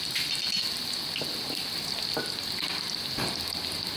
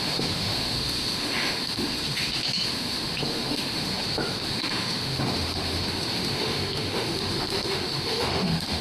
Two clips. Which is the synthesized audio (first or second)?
second